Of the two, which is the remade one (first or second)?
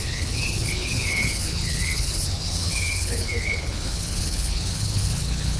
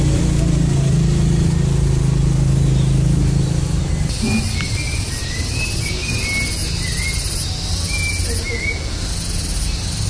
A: first